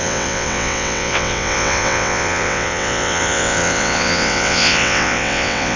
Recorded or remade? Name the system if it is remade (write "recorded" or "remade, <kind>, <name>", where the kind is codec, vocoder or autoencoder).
remade, vocoder, WaveNeXt